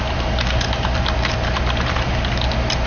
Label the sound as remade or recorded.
recorded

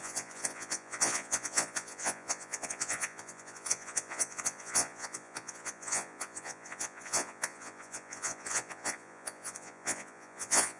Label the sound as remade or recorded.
remade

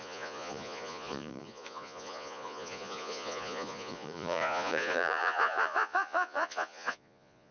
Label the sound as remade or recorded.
remade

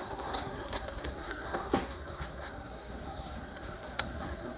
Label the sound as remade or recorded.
remade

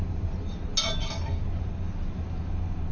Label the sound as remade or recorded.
recorded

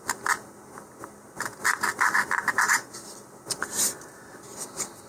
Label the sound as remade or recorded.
recorded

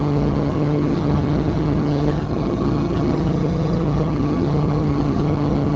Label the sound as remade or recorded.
remade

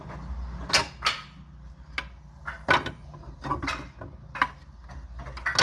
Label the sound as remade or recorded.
recorded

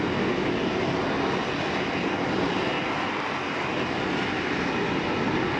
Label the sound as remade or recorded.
recorded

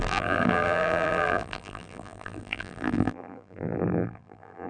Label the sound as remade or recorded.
remade